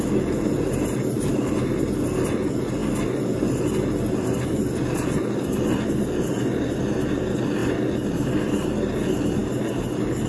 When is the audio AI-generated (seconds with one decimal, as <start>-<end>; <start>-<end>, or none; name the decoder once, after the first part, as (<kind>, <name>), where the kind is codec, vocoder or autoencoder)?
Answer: none